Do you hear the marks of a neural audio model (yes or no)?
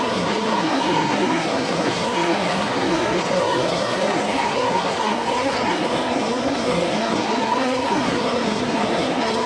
yes